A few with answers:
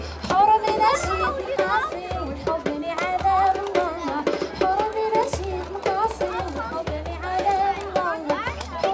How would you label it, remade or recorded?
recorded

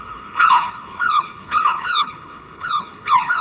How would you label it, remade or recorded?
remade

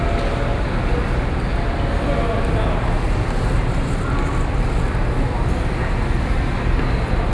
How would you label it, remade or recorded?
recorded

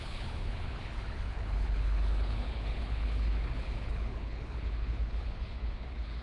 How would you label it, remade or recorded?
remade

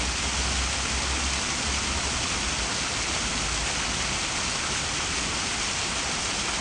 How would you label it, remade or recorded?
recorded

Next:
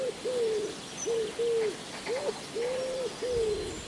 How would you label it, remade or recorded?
recorded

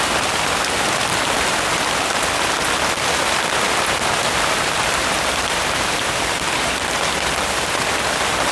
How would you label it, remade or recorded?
recorded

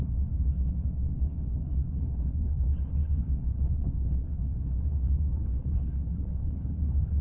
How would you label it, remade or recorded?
remade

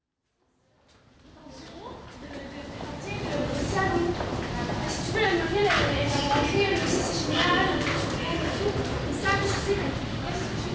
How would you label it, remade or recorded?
recorded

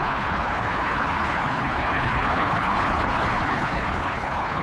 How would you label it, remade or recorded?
remade